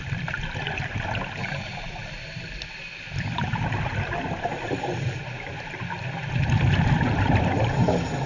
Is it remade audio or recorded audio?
recorded